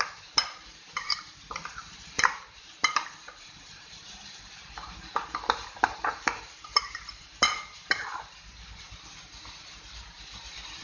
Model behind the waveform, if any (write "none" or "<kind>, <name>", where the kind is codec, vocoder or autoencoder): vocoder, BigVGAN v2